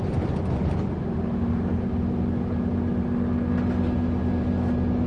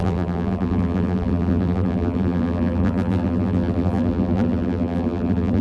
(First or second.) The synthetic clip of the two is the second